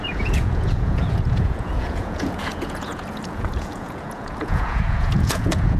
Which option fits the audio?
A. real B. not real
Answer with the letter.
B